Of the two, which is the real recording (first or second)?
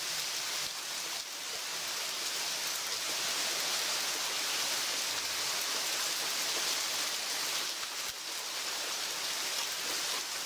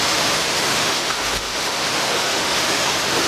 first